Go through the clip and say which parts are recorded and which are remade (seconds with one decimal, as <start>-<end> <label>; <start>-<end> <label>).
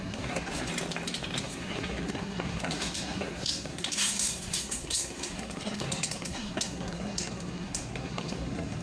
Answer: 0.0-0.7 remade; 0.7-1.4 recorded; 1.4-8.8 remade